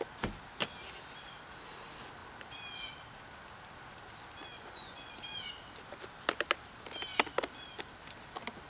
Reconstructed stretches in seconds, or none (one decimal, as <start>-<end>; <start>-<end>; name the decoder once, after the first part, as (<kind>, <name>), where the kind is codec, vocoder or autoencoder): 4.5-5.1 (vocoder, Vocos)